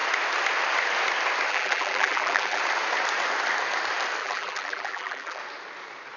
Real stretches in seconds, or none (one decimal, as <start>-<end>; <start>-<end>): 0.0-1.5; 2.6-4.2; 5.4-6.2